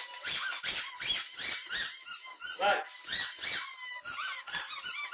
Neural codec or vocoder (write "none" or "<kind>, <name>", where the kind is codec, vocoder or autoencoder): none